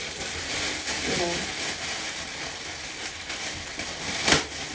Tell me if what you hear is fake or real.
real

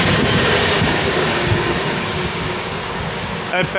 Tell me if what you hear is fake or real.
fake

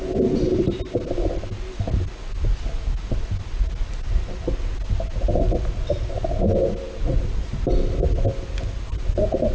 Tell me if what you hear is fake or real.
real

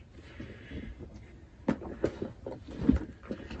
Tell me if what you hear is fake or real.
real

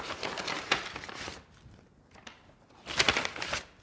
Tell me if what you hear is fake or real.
real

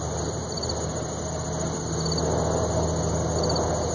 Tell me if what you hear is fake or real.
real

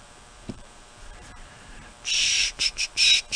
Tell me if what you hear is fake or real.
fake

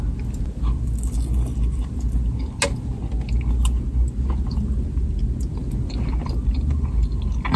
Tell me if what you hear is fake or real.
real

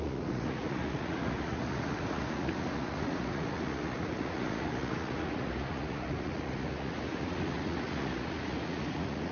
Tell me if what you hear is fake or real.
fake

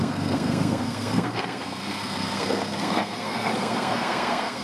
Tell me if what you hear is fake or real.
fake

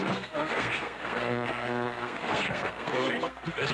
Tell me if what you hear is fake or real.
fake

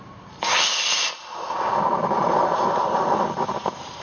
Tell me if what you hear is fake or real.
real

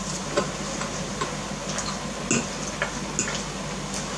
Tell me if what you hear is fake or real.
real